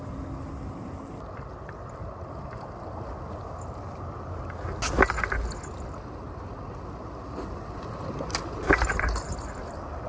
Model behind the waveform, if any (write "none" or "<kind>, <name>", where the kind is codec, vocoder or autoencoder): none